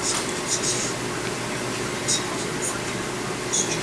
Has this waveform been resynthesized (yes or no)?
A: no